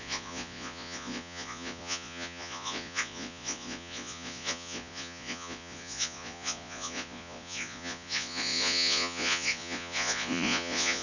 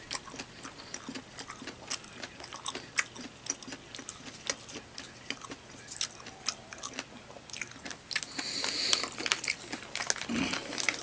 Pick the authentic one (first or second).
second